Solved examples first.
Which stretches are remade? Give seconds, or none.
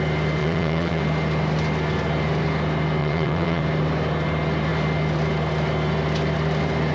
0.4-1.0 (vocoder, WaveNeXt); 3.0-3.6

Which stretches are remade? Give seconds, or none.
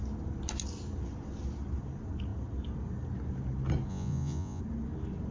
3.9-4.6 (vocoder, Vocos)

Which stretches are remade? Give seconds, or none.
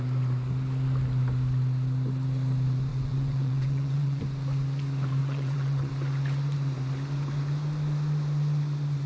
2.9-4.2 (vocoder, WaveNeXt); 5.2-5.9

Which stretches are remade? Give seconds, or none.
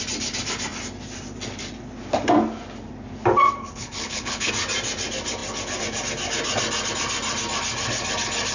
3.6-4.5 (codec, HILCodec)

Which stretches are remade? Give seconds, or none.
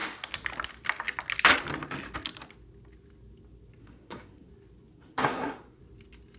3.8-4.5 (codec, SNAC); 4.9-5.8